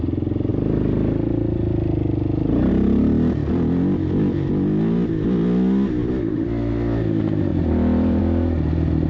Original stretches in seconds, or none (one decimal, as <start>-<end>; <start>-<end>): 0.0-0.5; 2.7-7.5; 8.2-9.1